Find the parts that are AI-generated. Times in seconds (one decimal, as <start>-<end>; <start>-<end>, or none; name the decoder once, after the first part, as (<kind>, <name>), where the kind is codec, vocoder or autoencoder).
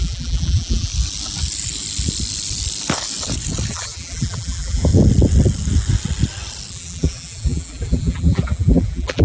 0.0-0.9 (vocoder, BigVGAN v2); 3.7-4.9; 6.7-9.2